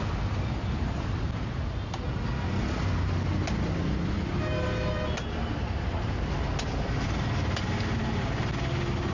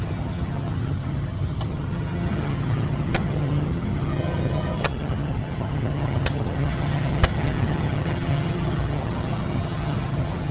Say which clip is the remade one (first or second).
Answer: second